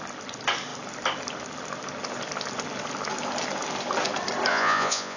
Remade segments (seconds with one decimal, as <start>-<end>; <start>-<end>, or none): 4.5-5.2